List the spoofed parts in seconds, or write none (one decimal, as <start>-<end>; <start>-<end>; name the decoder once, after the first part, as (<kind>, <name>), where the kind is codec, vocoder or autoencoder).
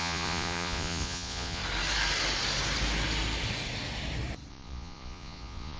0.0-1.6 (vocoder, Vocos); 4.5-5.8